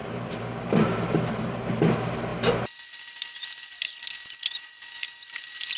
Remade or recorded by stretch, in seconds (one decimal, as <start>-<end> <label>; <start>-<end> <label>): 0.0-1.6 remade; 1.6-5.8 recorded